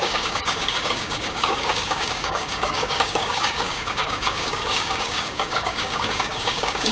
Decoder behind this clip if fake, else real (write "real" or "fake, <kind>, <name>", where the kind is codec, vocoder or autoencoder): fake, codec, DAC